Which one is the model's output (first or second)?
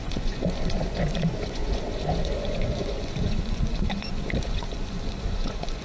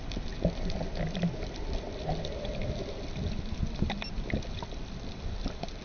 first